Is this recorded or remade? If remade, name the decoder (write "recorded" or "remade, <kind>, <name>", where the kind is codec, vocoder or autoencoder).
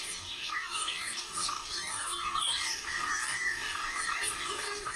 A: remade, codec, DAC